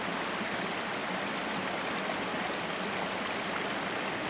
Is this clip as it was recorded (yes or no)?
yes